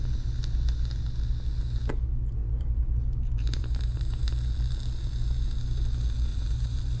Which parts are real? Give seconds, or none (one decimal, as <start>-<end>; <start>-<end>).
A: 0.0-2.4; 4.2-6.3